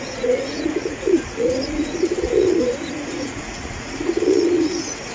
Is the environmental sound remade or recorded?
remade